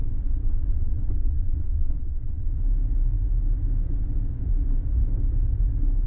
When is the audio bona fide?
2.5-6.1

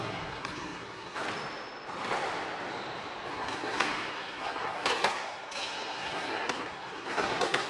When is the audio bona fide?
1.2-3.3

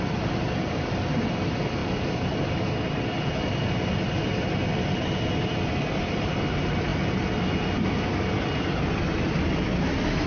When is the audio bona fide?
0.0-10.3

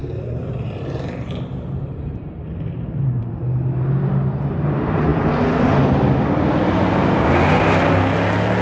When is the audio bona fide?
3.3-8.6

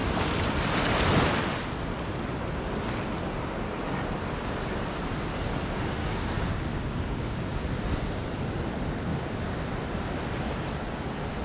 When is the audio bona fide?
0.0-6.0; 7.6-9.1; 9.7-11.4

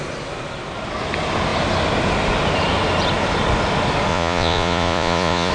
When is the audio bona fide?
0.0-4.1